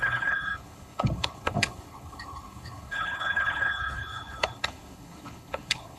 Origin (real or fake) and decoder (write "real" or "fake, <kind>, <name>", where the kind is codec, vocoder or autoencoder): fake, codec, HILCodec